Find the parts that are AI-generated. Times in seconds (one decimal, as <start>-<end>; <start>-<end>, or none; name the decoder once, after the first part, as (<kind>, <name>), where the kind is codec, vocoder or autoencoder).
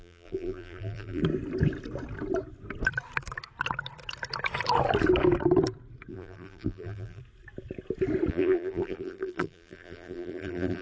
0.0-1.2 (vocoder, BigVGAN v2); 6.1-7.2; 8.3-10.8